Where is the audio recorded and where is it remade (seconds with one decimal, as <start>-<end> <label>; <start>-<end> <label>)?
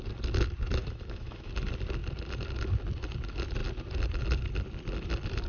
0.0-0.8 recorded; 0.8-1.5 remade; 1.5-5.5 recorded